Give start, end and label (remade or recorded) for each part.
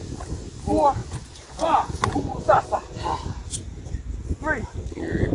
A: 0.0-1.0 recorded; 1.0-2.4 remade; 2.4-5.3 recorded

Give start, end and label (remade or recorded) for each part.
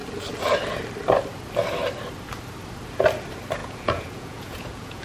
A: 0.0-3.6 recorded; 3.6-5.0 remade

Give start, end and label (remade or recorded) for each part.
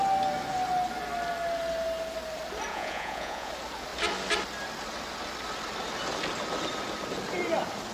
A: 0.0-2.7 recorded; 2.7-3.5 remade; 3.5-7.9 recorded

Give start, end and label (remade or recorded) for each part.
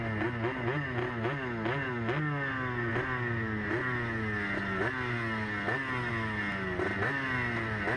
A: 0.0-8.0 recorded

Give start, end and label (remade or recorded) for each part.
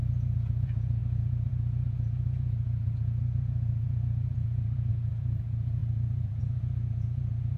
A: 0.0-7.6 remade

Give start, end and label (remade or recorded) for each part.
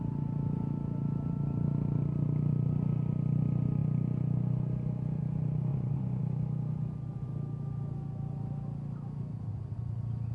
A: 0.0-5.7 recorded; 5.7-6.2 remade; 6.2-10.3 recorded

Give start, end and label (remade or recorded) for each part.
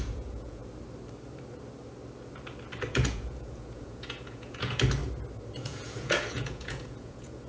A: 0.0-0.6 remade; 0.6-2.9 recorded; 2.9-5.0 remade; 5.0-5.6 recorded; 5.6-7.5 remade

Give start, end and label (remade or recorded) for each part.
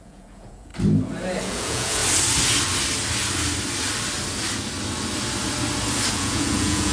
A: 0.0-0.7 remade; 0.7-1.4 recorded; 1.4-2.0 remade; 2.0-6.1 recorded; 6.1-6.9 remade